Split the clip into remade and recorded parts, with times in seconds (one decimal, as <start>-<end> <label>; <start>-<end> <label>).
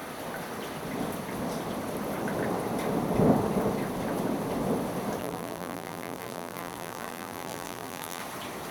0.0-5.2 recorded; 5.2-8.2 remade; 8.2-8.7 recorded